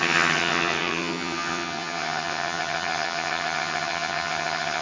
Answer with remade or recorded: remade